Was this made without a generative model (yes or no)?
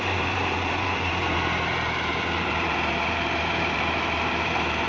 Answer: no